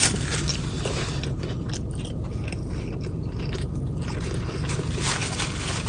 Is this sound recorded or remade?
recorded